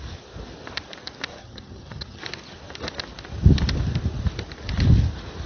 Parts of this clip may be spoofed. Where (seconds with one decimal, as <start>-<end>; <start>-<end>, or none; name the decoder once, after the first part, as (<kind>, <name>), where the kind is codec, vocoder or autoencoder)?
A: 1.4-2.2 (vocoder, HiFi-GAN)